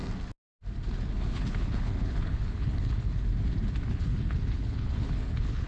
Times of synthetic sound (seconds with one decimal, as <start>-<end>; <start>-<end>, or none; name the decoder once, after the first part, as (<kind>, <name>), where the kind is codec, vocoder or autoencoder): 1.2-3.3 (codec, HILCodec); 3.9-5.7